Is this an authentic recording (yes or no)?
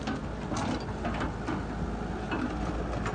yes